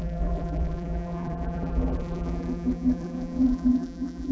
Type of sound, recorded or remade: remade